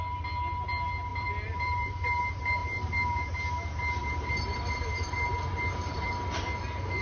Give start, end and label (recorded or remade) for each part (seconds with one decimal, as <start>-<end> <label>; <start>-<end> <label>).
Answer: 0.0-1.1 recorded; 1.1-2.2 remade; 2.2-2.6 recorded; 2.6-3.3 remade; 3.3-4.0 recorded; 4.0-6.1 remade; 6.1-7.0 recorded